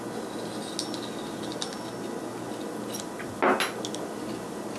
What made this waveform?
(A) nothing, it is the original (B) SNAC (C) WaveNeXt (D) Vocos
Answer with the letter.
A